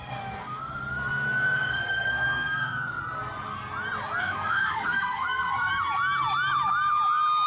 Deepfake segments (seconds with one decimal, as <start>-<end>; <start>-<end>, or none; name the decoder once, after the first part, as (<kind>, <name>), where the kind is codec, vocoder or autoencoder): 0.0-3.0 (codec, SNAC); 4.2-5.7